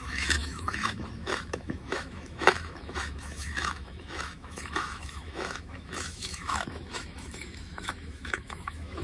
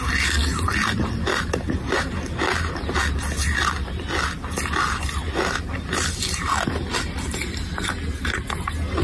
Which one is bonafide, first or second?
second